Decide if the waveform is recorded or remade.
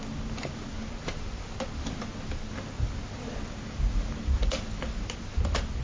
recorded